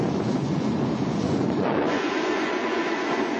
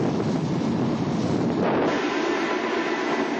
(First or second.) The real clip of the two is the second